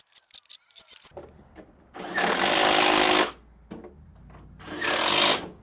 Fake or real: real